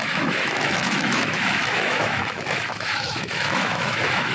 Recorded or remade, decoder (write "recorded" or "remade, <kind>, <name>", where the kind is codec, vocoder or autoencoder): remade, autoencoder, DAC-VAE